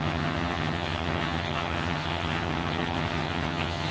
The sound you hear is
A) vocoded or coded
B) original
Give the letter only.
A